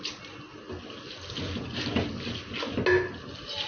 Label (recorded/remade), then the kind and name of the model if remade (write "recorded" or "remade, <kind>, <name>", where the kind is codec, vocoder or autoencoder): recorded